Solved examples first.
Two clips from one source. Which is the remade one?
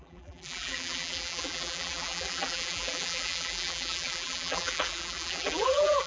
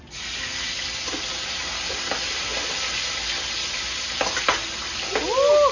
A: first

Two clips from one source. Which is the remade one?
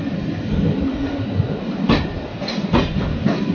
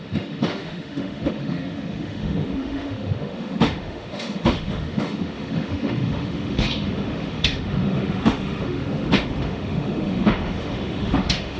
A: second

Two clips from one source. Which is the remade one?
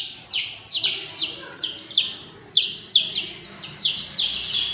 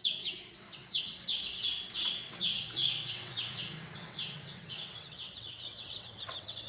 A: second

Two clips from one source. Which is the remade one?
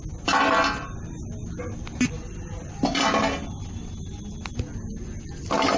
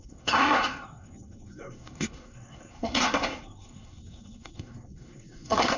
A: second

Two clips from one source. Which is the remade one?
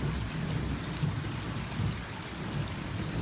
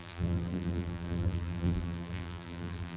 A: second